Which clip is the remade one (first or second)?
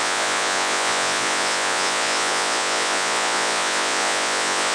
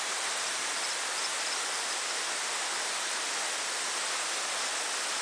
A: first